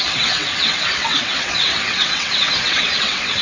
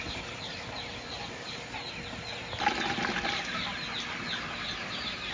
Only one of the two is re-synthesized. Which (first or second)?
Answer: first